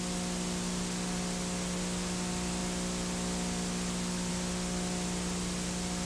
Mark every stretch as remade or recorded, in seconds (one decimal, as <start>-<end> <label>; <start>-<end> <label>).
0.0-6.0 recorded